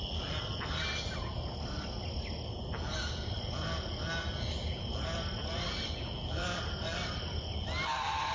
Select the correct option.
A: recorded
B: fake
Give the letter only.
A